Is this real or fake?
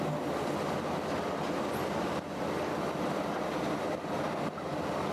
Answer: fake